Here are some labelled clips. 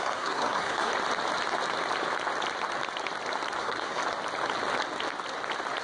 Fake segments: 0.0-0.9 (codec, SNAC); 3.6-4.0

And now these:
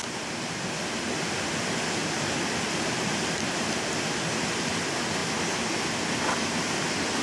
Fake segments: none

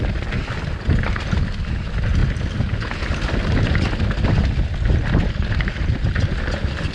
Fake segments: none

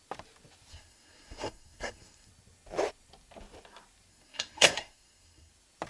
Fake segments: 0.7-2.3 (codec, SNAC); 4.1-5.5